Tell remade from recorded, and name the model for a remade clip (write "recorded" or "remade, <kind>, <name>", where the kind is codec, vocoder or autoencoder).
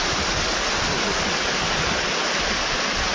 recorded